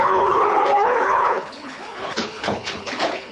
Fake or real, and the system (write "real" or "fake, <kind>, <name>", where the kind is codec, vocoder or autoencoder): fake, codec, HILCodec